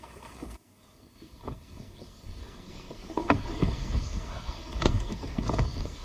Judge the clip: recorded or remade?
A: remade